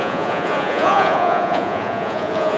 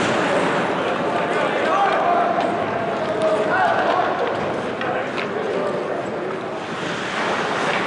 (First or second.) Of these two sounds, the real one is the second